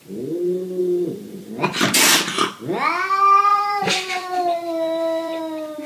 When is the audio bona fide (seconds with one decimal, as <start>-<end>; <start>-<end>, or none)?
0.0-0.8; 1.5-3.5; 5.4-5.9